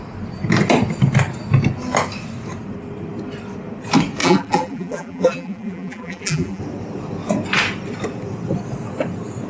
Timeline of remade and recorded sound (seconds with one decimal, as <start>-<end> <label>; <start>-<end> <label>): 0.0-4.2 recorded; 4.2-6.6 remade; 6.6-9.5 recorded

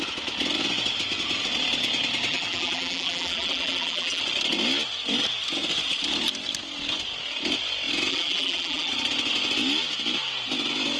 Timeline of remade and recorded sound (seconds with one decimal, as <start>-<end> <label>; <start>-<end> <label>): 0.0-2.3 recorded; 2.3-4.2 remade; 4.2-8.1 recorded; 8.1-8.9 remade; 8.9-11.0 recorded

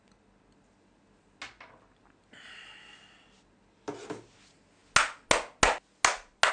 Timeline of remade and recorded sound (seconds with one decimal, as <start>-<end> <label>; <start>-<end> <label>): 0.0-6.5 recorded

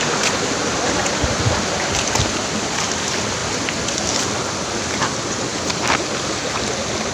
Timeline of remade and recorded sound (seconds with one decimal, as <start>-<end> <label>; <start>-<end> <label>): 0.0-7.1 recorded